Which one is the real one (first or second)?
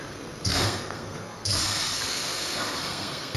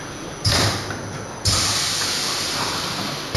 second